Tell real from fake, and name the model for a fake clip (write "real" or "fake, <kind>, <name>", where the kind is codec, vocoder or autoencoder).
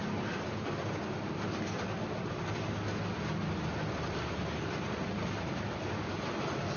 real